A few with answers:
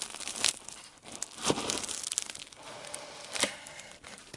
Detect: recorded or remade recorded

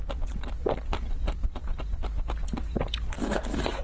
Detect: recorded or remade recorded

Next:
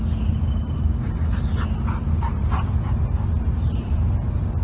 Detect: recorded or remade recorded